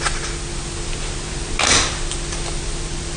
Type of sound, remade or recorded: recorded